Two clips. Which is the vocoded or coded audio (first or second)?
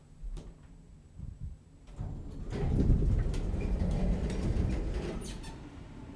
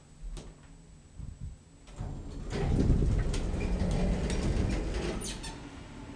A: first